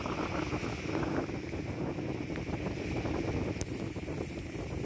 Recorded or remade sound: recorded